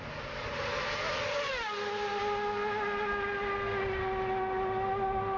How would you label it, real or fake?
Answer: real